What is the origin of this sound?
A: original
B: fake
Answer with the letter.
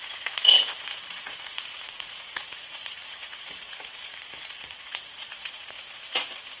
B